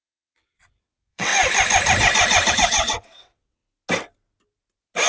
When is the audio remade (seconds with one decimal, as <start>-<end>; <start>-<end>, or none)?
0.0-1.3; 2.5-3.6